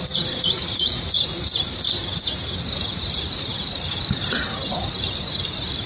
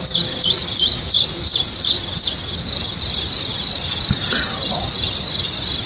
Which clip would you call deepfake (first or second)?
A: first